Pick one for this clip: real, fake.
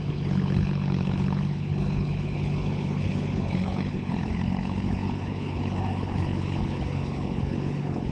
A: fake